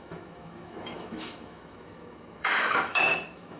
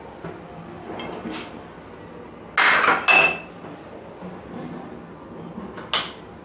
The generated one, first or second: first